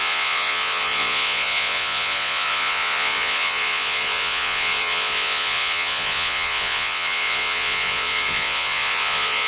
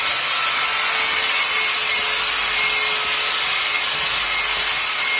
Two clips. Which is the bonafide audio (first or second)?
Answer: second